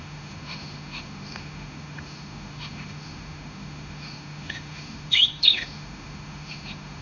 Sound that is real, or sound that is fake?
fake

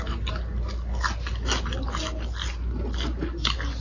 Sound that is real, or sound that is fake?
real